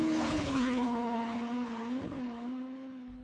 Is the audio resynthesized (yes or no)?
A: yes